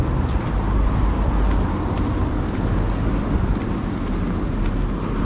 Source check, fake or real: real